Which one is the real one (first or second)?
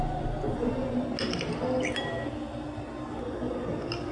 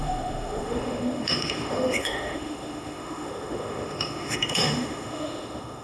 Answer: first